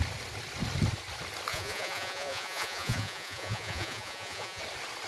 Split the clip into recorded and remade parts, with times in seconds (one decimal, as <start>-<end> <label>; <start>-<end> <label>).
0.0-1.5 recorded; 1.5-4.6 remade; 4.6-5.1 recorded